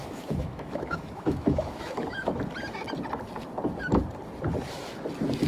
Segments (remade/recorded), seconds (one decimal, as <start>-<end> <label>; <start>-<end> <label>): 0.0-2.4 remade; 2.4-5.5 recorded